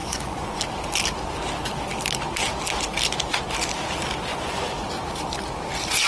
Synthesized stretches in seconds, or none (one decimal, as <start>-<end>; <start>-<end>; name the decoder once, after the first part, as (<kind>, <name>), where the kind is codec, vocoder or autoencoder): 0.0-0.6 (vocoder, Vocos); 4.3-4.9